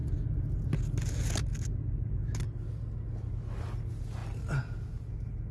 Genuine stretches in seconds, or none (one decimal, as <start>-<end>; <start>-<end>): 0.0-5.5